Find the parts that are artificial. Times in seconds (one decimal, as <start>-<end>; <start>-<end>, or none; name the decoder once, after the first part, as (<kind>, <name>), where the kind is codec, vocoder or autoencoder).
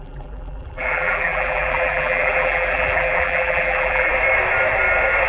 0.0-4.1 (vocoder, BigVGAN v2)